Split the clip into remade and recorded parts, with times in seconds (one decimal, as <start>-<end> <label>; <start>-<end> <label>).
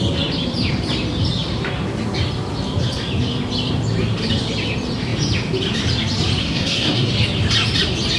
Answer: 0.0-6.4 recorded; 6.4-7.1 remade; 7.1-8.2 recorded